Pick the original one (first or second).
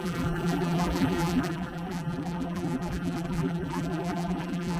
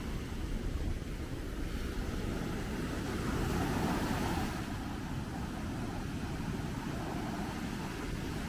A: second